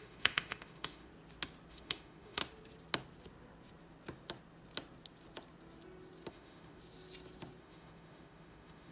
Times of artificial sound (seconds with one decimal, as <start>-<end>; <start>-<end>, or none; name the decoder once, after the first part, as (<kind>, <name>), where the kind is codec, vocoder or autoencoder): 0.0-1.1 (autoencoder, DAC-VAE); 1.7-2.4; 6.3-6.8; 7.6-8.9